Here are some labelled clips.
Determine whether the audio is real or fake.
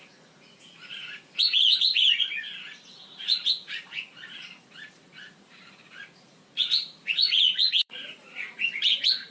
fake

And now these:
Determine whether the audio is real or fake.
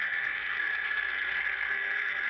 fake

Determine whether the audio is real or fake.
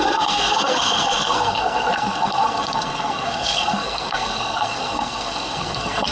fake